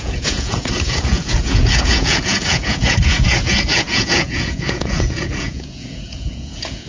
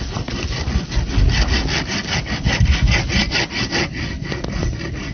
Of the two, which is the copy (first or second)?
first